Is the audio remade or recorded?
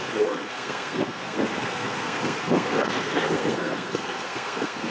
remade